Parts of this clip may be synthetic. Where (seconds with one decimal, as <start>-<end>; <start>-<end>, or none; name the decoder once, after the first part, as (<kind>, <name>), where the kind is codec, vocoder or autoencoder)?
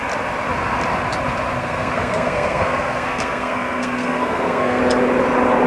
1.6-4.8 (codec, SNAC)